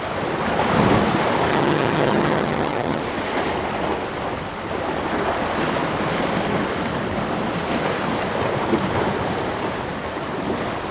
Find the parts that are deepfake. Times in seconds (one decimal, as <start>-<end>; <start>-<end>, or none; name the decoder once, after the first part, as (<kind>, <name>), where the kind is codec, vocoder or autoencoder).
1.5-3.0 (vocoder, HiFi-GAN)